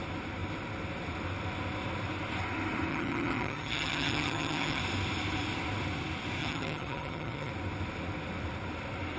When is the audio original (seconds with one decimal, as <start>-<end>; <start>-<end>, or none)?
0.0-2.9; 4.8-6.4; 7.5-9.2